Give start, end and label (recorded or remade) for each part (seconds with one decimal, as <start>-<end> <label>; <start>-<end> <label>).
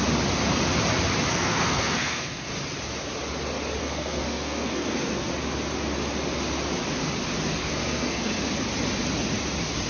0.0-1.3 recorded; 1.3-2.5 remade; 2.5-3.8 recorded; 3.8-5.3 remade; 5.3-7.6 recorded; 7.6-8.5 remade; 8.5-9.9 recorded